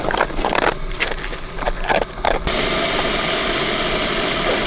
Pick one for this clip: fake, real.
real